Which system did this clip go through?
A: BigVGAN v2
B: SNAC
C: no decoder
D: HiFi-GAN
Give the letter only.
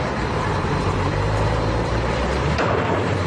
A